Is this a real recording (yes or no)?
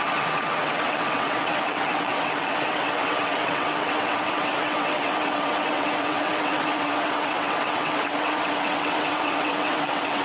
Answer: no